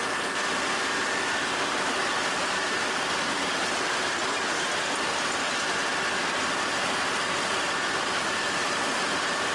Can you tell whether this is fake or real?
fake